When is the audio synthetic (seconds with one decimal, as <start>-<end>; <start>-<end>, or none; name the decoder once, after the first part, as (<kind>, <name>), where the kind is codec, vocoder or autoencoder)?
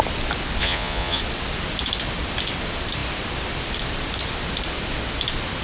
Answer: 0.6-1.2 (vocoder, Vocos)